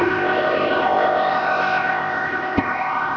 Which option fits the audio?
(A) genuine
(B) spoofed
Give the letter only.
B